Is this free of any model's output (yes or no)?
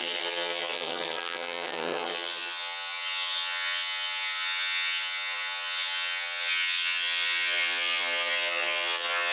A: no